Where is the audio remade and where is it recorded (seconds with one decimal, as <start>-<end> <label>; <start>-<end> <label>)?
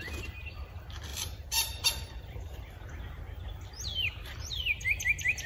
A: 0.0-1.1 recorded; 1.1-2.9 remade; 2.9-3.9 recorded; 3.9-4.6 remade; 4.6-5.5 recorded